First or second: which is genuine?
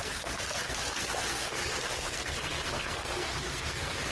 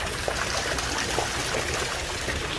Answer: second